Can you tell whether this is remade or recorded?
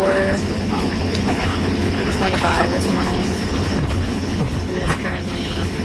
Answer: remade